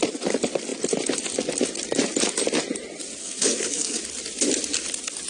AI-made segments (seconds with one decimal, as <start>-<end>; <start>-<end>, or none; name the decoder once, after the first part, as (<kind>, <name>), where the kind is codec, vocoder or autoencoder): 3.2-4.0 (codec, SNAC)